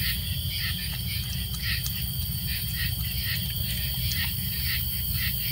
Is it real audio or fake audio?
real